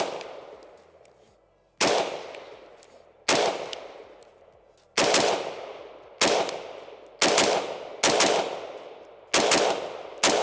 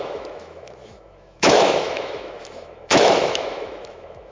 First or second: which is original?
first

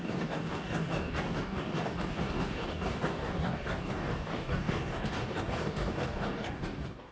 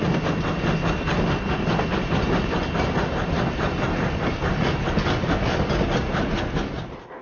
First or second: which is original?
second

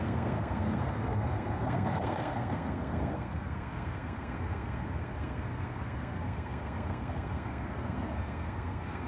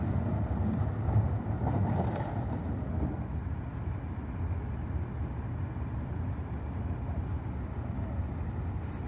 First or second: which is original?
second